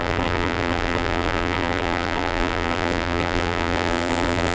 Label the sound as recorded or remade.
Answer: remade